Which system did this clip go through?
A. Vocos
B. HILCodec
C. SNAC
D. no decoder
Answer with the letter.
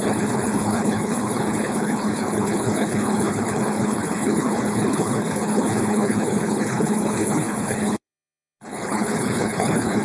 B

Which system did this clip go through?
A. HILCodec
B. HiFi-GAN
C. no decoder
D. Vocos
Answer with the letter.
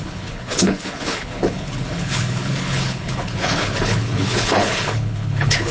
A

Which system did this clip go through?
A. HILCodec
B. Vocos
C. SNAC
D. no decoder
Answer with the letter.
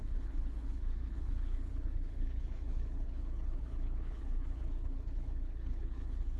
A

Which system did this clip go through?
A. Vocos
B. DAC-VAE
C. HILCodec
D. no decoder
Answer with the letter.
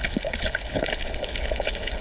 C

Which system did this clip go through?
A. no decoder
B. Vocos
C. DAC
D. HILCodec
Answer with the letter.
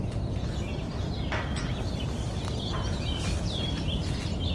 A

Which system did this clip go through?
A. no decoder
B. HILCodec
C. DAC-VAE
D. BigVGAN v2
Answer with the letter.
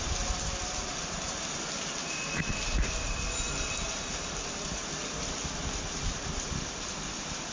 A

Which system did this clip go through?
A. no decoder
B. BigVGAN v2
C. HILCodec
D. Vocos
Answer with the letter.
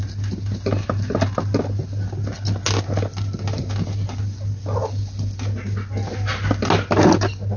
A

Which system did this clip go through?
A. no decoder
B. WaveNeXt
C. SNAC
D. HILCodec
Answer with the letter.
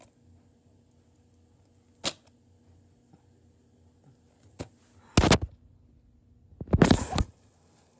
A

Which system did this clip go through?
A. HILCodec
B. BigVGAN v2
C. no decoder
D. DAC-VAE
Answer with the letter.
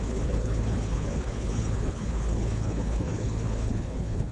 A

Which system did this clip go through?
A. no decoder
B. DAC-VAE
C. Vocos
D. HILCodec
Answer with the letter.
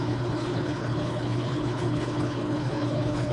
D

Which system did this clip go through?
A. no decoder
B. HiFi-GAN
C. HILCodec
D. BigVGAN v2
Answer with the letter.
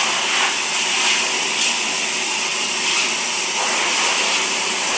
A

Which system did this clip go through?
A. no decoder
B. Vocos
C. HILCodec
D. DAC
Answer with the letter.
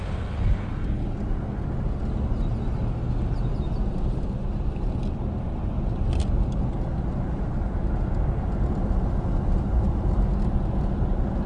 A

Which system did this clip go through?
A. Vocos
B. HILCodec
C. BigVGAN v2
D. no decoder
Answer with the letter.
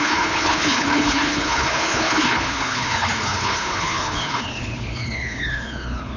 B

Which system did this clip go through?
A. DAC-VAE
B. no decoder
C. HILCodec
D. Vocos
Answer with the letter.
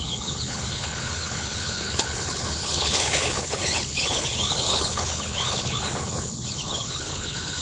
C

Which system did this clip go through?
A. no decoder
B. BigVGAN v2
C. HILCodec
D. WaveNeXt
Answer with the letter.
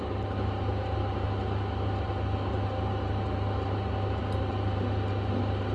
A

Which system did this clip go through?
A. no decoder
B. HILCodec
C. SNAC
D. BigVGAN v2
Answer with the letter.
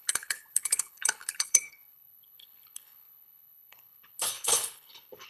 B